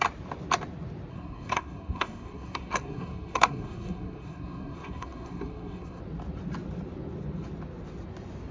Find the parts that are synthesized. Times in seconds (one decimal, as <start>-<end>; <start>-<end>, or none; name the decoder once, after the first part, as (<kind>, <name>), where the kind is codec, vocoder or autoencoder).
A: 1.1-6.0 (codec, SNAC)